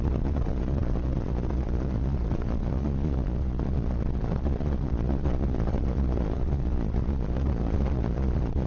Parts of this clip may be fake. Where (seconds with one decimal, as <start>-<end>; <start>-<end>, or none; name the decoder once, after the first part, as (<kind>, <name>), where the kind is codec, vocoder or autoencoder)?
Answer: 0.0-8.7 (vocoder, Vocos)